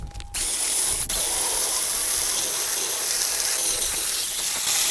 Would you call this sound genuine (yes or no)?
yes